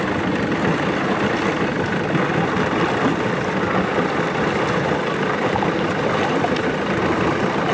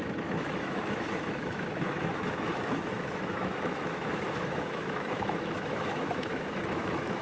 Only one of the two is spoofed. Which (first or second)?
second